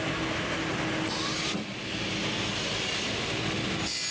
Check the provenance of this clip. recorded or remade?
recorded